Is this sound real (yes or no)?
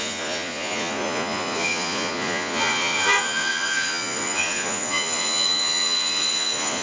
no